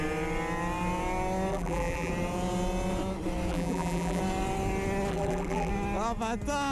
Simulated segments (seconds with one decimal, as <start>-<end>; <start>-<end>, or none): 1.5-2.1; 3.5-4.2; 5.1-5.7